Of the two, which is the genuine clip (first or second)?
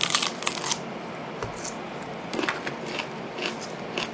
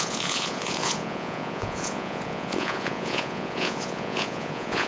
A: first